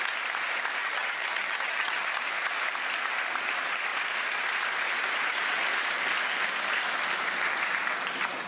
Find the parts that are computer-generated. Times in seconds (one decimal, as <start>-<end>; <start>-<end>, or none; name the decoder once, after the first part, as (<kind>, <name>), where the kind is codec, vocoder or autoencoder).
0.8-2.1 (vocoder, HiFi-GAN)